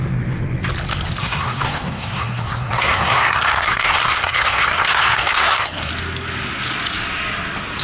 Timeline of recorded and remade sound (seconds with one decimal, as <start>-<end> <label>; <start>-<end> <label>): 0.0-1.2 recorded; 1.2-5.9 remade; 5.9-7.8 recorded